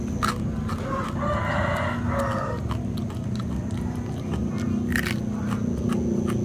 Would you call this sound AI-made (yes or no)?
no